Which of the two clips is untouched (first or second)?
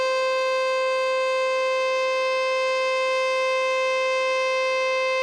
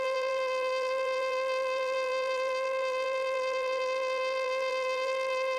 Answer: first